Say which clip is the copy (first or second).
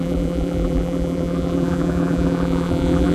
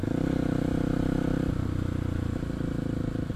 first